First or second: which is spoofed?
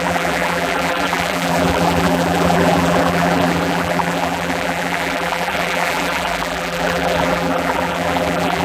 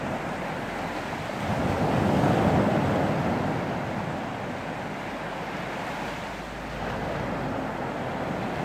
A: first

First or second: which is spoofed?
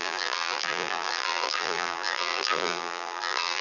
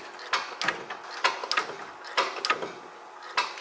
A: first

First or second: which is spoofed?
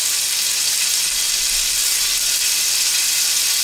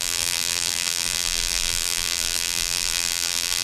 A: second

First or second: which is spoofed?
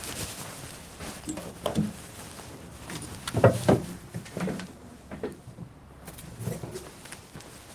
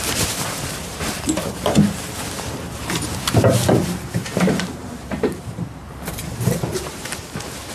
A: second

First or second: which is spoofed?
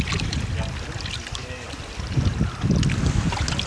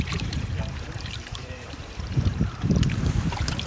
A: second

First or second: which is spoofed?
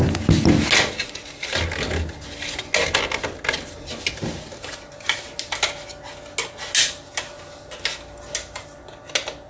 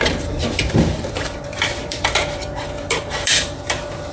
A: second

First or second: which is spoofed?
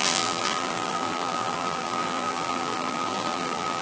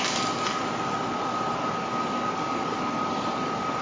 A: first